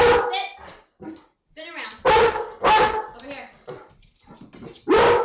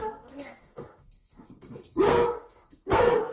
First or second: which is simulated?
second